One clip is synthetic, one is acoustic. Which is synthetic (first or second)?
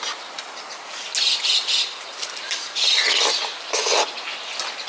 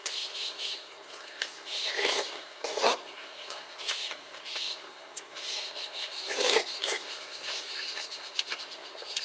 second